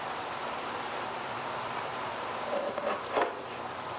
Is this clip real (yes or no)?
yes